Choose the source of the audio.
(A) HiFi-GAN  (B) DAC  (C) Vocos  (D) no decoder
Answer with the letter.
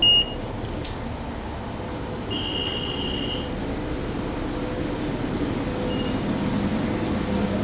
D